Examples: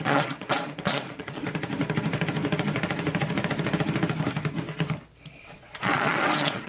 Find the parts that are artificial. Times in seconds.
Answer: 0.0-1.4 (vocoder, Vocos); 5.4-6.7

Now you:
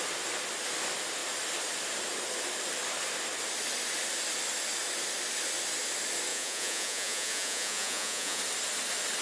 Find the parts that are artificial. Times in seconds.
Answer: 6.3-8.4 (vocoder, Vocos)

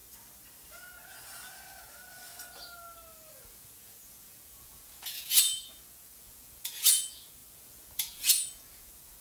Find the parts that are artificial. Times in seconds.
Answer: 3.3-9.2 (vocoder, Vocos)

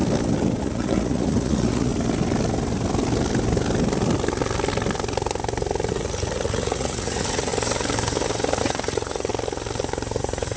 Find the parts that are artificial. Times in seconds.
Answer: 0.6-1.9 (vocoder, Vocos); 5.9-7.5; 8.6-9.3; 10.2-10.6

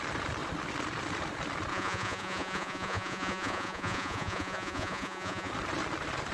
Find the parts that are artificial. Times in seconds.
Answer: 1.7-5.5 (vocoder, Vocos)

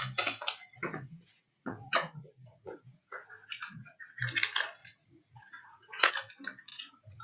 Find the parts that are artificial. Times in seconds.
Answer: 0.6-4.0 (vocoder, Vocos); 4.8-6.1; 6.7-7.2

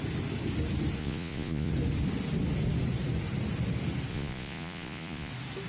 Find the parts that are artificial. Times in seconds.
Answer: 1.0-1.7 (vocoder, Vocos); 4.1-5.3